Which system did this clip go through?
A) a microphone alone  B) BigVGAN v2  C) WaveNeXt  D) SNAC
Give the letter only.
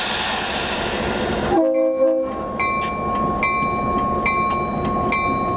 A